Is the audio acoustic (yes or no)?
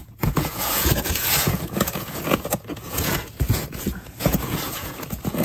no